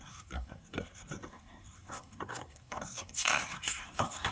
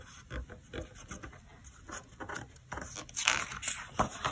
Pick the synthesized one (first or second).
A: first